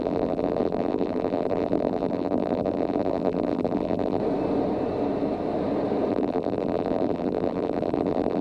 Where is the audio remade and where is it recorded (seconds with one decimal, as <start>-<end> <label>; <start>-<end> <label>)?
0.0-4.2 remade; 4.2-6.1 recorded; 6.1-8.4 remade